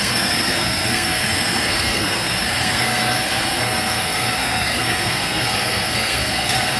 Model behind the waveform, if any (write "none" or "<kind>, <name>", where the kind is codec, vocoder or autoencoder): codec, SNAC